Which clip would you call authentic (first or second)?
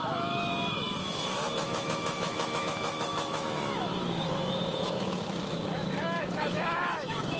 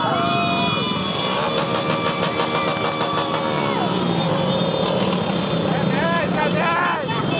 second